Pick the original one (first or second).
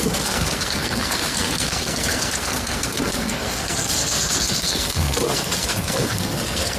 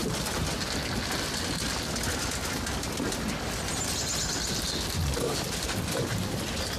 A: second